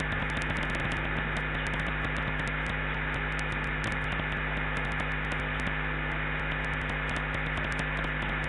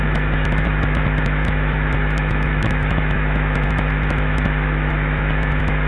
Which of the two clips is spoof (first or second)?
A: second